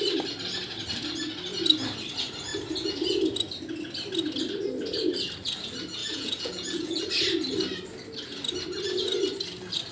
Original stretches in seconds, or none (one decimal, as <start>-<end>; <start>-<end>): 0.0-6.0; 7.0-9.9